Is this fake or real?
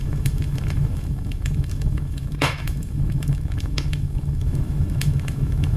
fake